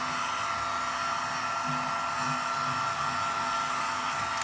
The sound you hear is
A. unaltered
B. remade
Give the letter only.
A